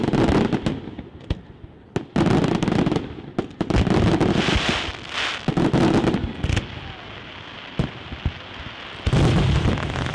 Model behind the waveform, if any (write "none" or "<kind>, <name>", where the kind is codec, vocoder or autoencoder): none